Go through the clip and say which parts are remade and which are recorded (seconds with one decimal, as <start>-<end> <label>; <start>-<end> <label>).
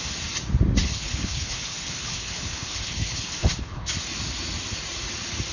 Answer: 0.0-0.8 recorded; 0.8-3.9 remade; 3.9-5.5 recorded